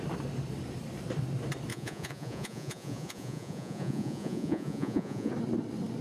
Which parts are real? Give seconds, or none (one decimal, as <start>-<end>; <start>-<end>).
0.0-1.7; 5.3-6.0